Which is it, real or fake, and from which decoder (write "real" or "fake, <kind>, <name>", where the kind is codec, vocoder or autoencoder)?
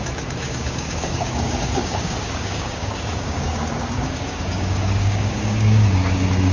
fake, codec, DAC